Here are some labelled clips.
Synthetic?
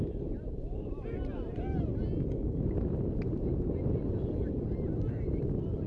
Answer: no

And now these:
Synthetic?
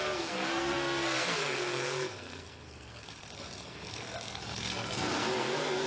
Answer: yes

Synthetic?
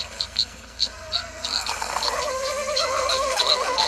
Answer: yes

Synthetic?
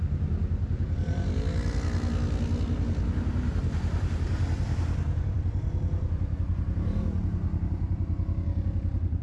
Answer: no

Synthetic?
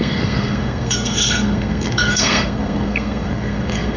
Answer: yes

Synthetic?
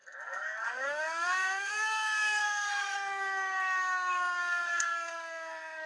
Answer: yes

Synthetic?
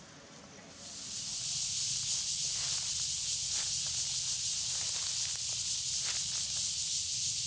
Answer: no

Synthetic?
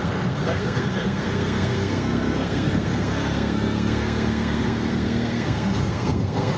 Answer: yes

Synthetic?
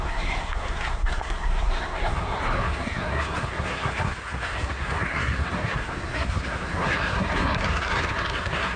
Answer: yes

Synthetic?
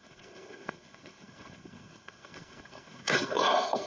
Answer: yes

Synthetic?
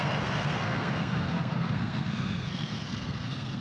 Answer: yes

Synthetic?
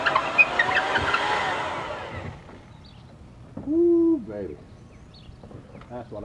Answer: no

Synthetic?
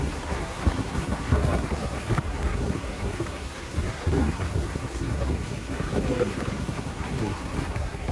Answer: yes